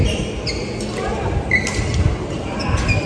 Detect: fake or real real